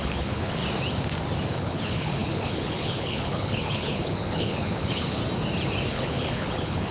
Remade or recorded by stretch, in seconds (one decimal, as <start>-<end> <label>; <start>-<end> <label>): 0.0-0.6 remade; 0.6-1.5 recorded; 1.5-5.2 remade; 5.2-5.9 recorded; 5.9-6.9 remade